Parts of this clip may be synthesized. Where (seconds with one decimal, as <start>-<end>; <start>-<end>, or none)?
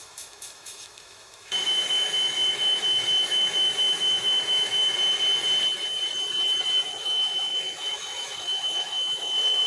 0.0-4.8; 7.0-9.7